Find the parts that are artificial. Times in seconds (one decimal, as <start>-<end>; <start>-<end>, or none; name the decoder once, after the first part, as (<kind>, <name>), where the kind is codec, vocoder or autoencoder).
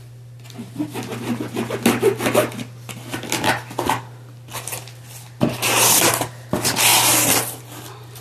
none